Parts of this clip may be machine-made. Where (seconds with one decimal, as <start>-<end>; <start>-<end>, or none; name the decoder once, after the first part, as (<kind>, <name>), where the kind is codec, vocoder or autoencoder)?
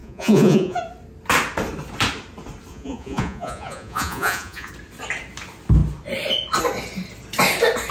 0.0-0.8 (vocoder, Vocos); 2.7-4.7